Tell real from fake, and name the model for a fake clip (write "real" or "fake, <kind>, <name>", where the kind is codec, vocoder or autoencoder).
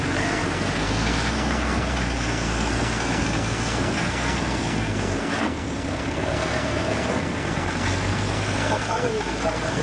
fake, codec, SNAC